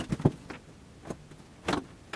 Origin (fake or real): real